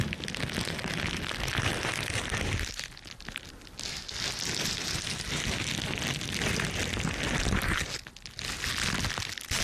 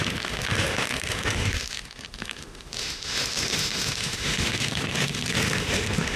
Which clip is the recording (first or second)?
first